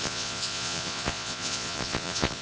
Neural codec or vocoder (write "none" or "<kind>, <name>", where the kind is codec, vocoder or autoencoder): vocoder, Vocos